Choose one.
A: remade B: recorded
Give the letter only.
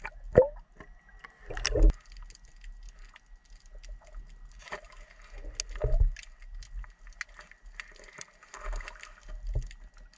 B